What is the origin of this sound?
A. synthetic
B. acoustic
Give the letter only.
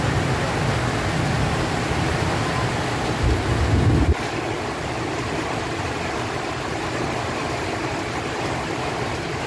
B